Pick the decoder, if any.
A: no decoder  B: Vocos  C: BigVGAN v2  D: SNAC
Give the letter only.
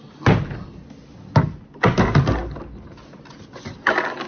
A